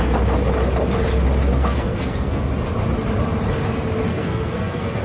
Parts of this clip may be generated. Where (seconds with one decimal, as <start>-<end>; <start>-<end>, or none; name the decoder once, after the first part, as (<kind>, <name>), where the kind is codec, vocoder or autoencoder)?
1.5-2.4 (codec, SNAC); 4.1-5.0